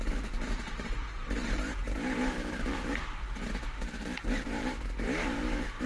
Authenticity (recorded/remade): remade